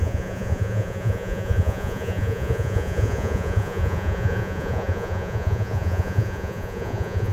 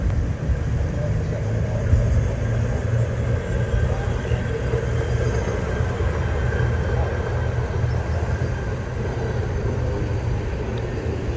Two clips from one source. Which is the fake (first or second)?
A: first